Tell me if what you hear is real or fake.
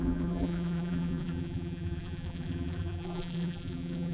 fake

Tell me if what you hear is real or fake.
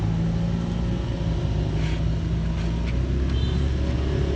real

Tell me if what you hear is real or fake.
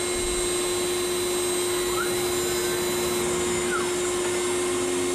real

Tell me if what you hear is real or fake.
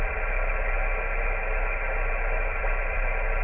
fake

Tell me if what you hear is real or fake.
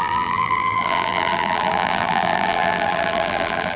fake